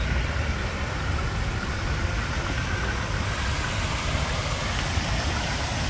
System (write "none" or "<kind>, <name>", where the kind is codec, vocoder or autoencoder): none